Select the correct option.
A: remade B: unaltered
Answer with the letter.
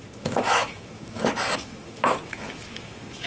A